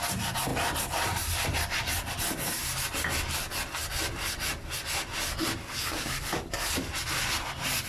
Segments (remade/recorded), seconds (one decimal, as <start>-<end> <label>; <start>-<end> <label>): 0.0-5.6 recorded; 5.6-6.9 remade; 6.9-7.9 recorded